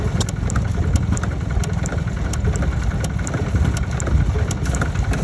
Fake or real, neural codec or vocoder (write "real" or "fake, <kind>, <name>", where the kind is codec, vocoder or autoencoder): real